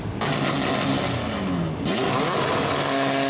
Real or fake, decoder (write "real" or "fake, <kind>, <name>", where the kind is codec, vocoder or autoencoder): real